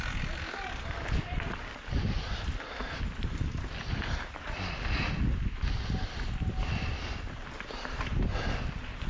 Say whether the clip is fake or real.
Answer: real